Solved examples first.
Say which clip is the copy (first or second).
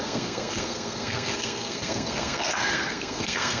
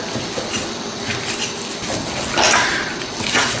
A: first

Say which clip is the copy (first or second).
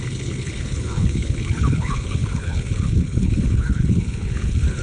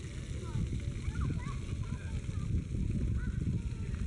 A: first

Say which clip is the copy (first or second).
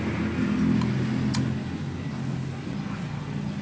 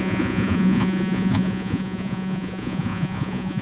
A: second